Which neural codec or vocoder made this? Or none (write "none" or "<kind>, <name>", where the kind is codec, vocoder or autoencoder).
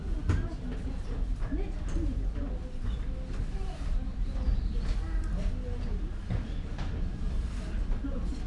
none